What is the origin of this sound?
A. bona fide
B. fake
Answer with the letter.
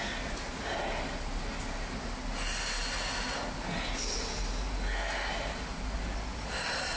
A